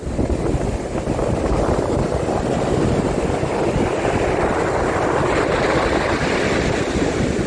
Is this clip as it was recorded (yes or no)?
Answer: yes